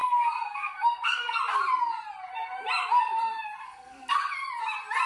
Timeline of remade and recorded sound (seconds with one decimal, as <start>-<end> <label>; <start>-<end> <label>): 0.0-1.4 remade; 1.4-3.6 recorded; 3.6-4.1 remade; 4.1-5.1 recorded